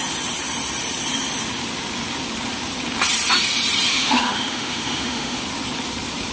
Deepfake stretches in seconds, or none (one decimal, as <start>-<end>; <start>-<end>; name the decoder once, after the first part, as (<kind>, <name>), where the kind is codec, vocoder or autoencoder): 3.9-5.4 (autoencoder, DAC-VAE)

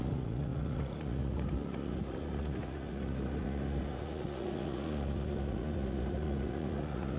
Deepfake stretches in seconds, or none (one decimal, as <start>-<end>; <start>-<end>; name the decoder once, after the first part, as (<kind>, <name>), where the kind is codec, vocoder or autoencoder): 0.0-7.2 (vocoder, Vocos)

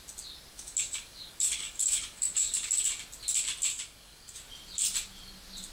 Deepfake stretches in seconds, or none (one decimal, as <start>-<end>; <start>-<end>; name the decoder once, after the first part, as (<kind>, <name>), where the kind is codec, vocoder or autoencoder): 0.5-2.8 (codec, DAC); 3.7-4.4

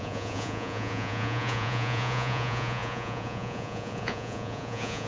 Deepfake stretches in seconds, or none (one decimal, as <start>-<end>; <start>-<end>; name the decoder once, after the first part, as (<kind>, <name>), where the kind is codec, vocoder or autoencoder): 0.0-5.1 (vocoder, Vocos)

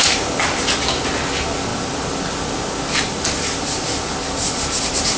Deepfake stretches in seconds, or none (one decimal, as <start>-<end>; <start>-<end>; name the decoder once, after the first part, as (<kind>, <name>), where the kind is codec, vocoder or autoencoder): none

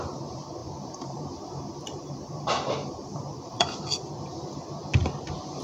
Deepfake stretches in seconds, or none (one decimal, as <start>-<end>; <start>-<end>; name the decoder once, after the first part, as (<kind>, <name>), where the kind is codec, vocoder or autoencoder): 0.6-3.8 (vocoder, BigVGAN v2); 5.0-5.6

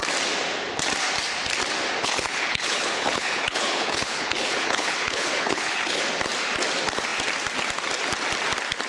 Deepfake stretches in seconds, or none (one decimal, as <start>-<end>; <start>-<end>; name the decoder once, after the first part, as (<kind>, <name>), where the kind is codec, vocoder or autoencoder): 2.0-6.0 (codec, HILCodec)